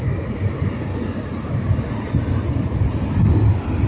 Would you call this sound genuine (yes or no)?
yes